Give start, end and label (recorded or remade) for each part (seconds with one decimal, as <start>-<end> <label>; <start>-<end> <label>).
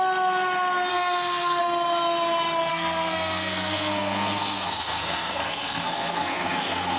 0.0-0.9 recorded; 0.9-1.6 remade; 1.6-2.7 recorded; 2.7-7.0 remade